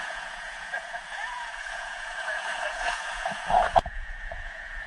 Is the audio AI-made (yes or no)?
yes